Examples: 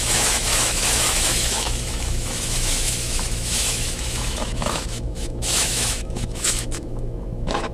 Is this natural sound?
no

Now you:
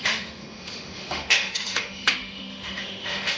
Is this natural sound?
no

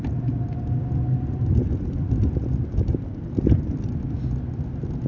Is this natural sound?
yes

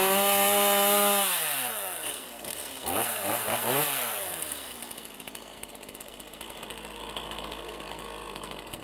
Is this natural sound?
no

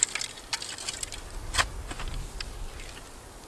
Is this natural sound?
yes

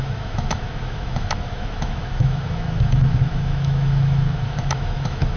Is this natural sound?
no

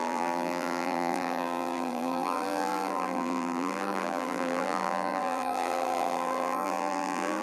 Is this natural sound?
no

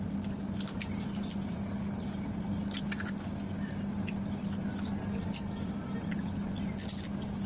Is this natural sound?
yes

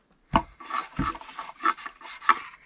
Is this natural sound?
yes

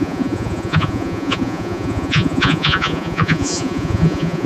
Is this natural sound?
no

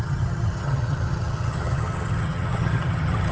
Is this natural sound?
no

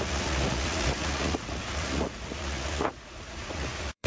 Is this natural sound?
no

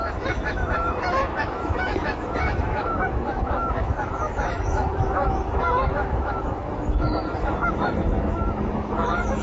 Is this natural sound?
no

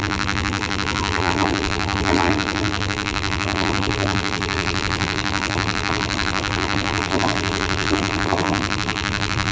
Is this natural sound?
no